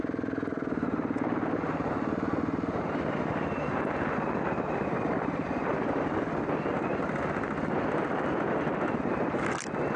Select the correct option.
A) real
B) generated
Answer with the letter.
A